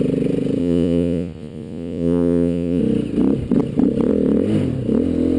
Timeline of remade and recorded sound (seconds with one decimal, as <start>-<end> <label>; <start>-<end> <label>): 0.0-0.6 recorded; 0.6-2.8 remade; 2.8-5.4 recorded